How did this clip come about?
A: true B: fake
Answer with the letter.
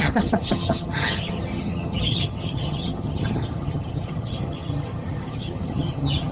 B